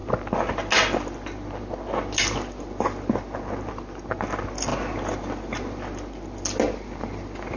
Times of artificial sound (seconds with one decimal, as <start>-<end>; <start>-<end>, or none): none